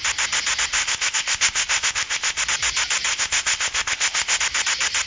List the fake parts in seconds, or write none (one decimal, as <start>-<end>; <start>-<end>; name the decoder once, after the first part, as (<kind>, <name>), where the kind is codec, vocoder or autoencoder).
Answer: 0.7-2.4 (codec, ZipCodec); 3.1-4.4